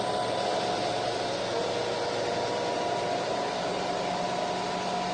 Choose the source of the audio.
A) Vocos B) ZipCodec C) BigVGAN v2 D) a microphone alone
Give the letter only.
D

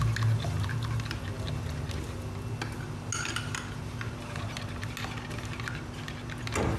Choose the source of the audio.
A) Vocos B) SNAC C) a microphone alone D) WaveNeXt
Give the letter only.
C